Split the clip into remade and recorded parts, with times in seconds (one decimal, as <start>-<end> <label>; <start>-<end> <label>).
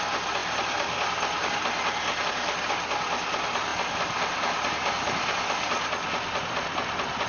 0.0-7.3 recorded